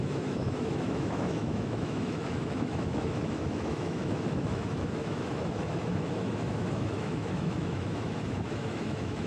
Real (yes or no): no